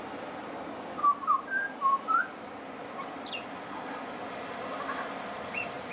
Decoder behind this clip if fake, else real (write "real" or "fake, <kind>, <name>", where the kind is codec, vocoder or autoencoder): real